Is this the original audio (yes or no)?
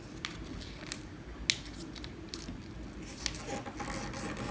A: yes